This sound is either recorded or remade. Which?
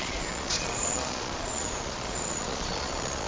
remade